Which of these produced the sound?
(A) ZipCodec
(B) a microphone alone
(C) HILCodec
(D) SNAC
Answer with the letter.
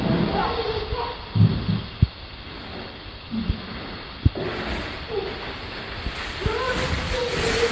B